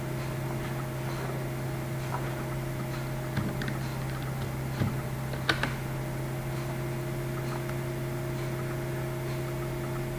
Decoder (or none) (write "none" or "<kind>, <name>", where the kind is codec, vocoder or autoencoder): none